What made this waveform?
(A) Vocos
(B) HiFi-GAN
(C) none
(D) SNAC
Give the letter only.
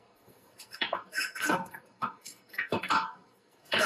D